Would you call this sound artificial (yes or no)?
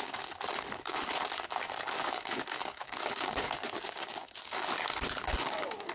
yes